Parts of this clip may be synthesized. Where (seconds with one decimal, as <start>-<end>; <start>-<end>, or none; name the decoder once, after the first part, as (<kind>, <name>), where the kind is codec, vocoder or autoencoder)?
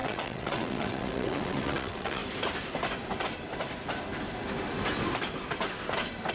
0.0-2.2 (vocoder, WaveNeXt)